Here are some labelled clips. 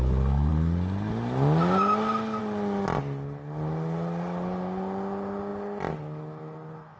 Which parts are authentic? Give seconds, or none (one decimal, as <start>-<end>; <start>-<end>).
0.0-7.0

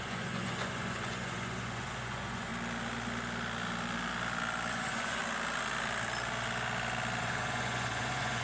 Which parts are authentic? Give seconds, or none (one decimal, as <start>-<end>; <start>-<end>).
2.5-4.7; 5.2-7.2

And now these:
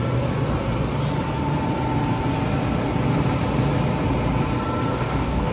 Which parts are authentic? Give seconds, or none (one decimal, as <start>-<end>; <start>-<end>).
0.0-4.9

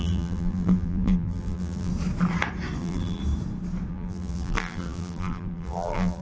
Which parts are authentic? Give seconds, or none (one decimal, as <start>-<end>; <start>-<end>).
1.9-2.8; 3.2-3.9

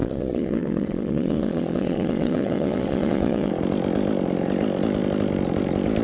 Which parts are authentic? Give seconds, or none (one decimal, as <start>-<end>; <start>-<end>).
3.5-6.0